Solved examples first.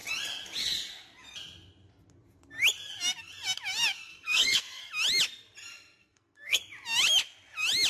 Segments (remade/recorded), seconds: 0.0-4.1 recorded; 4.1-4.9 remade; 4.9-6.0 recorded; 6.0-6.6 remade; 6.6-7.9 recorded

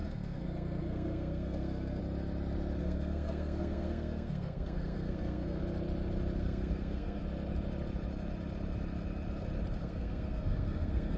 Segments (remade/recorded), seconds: 0.0-2.0 remade; 2.0-2.8 recorded; 2.8-5.6 remade; 5.6-6.4 recorded; 6.4-7.2 remade; 7.2-9.8 recorded; 9.8-11.2 remade

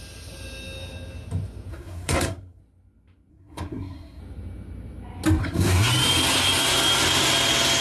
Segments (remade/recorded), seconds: 0.0-1.7 recorded; 1.7-2.6 remade; 2.6-3.3 recorded; 3.3-4.2 remade; 4.2-5.4 recorded; 5.4-5.9 remade; 5.9-7.8 recorded

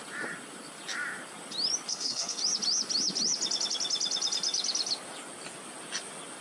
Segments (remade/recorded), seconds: 0.0-1.9 recorded; 1.9-2.4 remade; 2.4-6.4 recorded

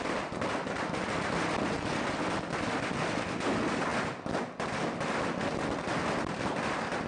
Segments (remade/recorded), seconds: 0.0-7.1 recorded

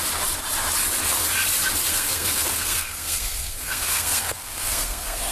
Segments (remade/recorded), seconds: 0.0-1.9 recorded; 1.9-5.3 remade

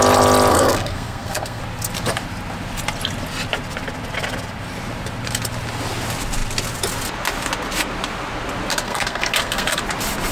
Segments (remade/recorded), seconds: 0.0-0.5 recorded; 0.5-1.6 remade; 1.6-8.7 recorded; 8.7-9.8 remade; 9.8-10.3 recorded

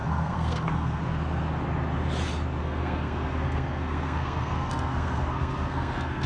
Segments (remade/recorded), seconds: 0.0-1.0 remade; 1.0-2.6 recorded; 2.6-6.3 remade